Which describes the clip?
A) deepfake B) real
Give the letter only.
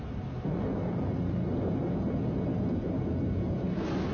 B